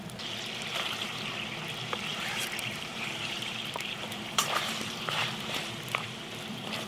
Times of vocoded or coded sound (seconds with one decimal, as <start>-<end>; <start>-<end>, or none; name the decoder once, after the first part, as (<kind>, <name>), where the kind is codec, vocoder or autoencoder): 2.1-5.6 (vocoder, BigVGAN v2)